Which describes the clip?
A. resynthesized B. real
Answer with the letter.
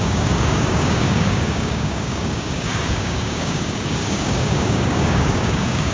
A